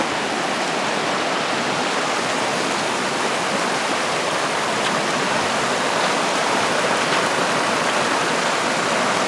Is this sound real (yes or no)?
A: yes